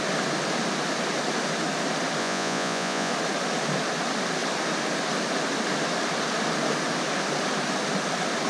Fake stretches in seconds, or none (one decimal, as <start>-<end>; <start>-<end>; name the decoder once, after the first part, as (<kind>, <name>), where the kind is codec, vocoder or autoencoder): 2.2-3.1 (vocoder, Vocos)